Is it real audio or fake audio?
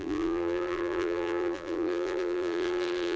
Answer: fake